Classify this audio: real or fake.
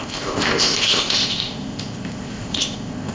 fake